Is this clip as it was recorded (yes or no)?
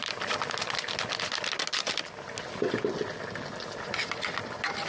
yes